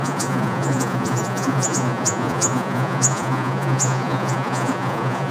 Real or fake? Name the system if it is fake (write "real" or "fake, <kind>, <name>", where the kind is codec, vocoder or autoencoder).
fake, vocoder, Vocos